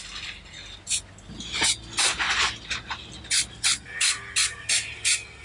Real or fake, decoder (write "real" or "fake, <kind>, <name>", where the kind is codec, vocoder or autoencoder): real